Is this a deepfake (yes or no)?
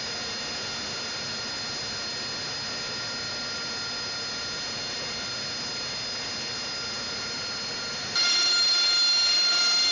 no